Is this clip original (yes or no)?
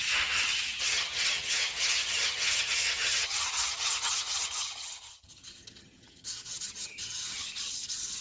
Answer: no